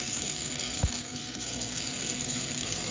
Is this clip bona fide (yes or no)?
no